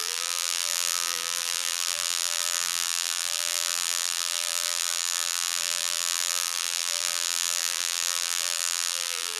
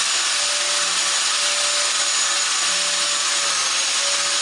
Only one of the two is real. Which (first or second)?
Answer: second